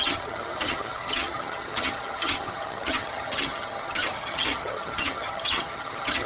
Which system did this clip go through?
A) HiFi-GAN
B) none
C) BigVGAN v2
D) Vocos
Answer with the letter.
A